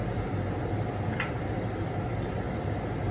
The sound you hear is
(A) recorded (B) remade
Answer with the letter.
A